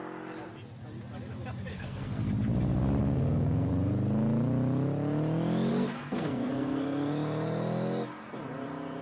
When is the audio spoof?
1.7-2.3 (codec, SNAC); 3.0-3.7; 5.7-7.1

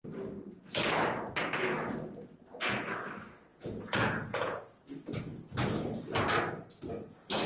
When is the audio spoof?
3.5-4.6 (vocoder, Vocos)

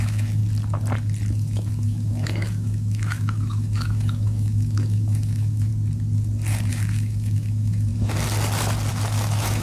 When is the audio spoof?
0.0-0.4 (autoencoder, DAC-VAE); 1.3-5.7; 6.7-7.9; 8.9-9.6

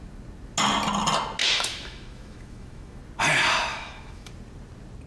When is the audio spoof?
1.4-3.0 (autoencoder, DAC-VAE); 3.7-4.3

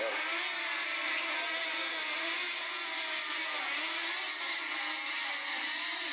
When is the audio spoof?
none

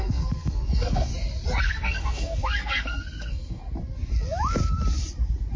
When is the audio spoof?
0.0-1.1 (codec, SNAC); 1.6-3.6

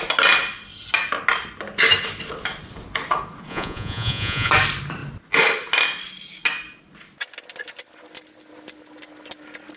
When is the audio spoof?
3.5-4.5 (vocoder, Vocos)